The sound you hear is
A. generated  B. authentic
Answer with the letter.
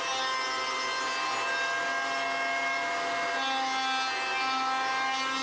B